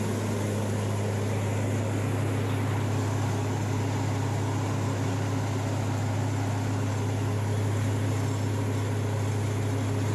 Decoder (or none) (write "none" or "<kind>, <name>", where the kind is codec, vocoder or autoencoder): none